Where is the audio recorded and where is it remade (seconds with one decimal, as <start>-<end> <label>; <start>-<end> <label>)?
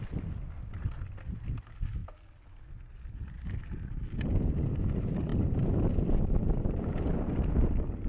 0.0-8.1 recorded